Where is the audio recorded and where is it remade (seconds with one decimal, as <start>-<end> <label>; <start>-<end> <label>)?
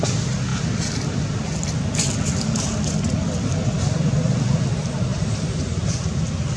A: 0.0-6.6 recorded